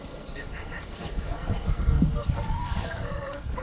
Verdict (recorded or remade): remade